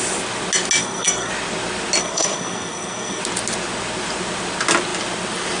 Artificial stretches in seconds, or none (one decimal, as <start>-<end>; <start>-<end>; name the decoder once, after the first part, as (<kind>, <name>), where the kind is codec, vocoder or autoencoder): 0.8-1.3 (codec, SNAC); 2.0-3.2